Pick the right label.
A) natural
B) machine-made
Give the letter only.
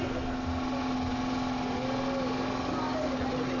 A